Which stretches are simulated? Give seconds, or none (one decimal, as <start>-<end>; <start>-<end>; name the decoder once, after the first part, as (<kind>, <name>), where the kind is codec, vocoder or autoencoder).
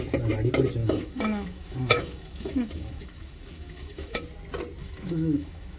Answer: 0.8-4.2 (autoencoder, DAC-VAE); 4.8-5.8